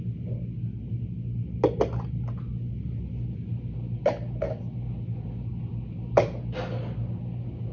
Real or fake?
real